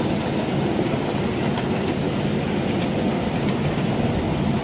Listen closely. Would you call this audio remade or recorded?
recorded